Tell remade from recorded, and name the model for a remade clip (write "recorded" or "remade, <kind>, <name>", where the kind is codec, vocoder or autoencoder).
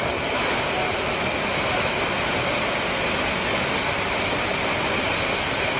recorded